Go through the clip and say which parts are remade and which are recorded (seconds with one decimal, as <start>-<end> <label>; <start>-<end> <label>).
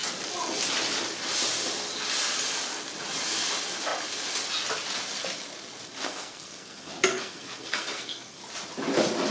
0.0-6.0 recorded; 6.0-8.4 remade; 8.4-9.3 recorded